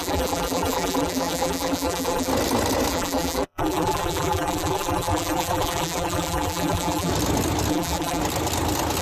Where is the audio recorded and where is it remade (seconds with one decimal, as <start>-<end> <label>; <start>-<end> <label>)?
0.0-2.3 remade; 2.3-2.9 recorded; 2.9-7.1 remade; 7.1-7.7 recorded; 7.7-8.2 remade; 8.2-9.0 recorded